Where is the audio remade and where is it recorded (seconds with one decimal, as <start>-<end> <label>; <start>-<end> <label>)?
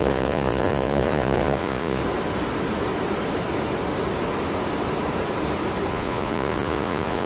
0.0-2.0 remade; 2.0-5.9 recorded; 5.9-7.3 remade